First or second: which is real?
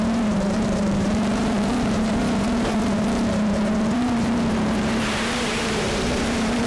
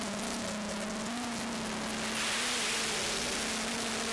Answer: second